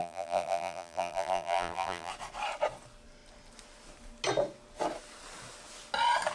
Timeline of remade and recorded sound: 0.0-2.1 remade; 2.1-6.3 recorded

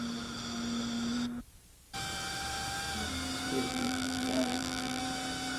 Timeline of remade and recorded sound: 0.0-3.7 recorded; 3.7-5.0 remade; 5.0-5.6 recorded

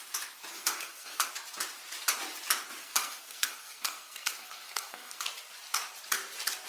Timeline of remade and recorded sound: 0.0-0.5 recorded; 0.5-1.3 remade; 1.3-2.8 recorded; 2.8-5.2 remade; 5.2-6.7 recorded

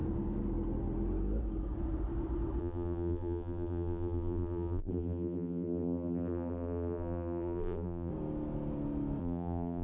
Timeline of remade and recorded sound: 0.0-2.6 recorded; 2.6-8.1 remade; 8.1-9.2 recorded; 9.2-9.8 remade